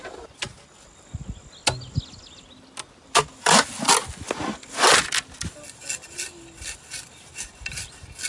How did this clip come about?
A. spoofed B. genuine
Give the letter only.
B